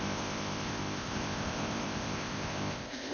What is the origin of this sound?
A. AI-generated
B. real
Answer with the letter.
A